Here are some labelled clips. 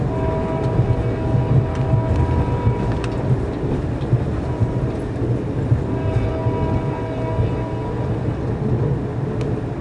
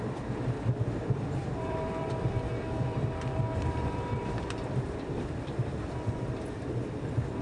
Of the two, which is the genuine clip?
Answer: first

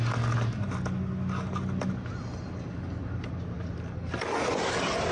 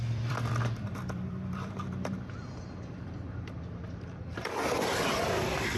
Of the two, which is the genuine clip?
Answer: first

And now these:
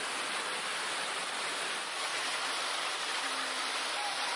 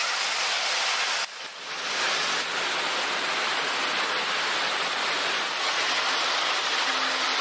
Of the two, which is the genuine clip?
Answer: second